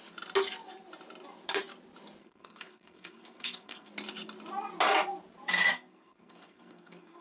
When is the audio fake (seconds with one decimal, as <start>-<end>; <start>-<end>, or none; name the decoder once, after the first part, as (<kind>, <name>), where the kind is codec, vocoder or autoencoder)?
2.2-3.9 (codec, SNAC); 5.7-7.2